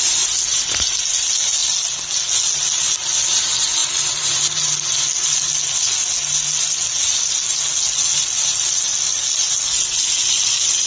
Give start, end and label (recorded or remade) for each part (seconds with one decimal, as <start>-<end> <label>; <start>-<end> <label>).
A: 0.0-10.9 recorded